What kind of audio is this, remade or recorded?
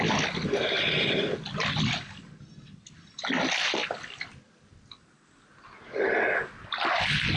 recorded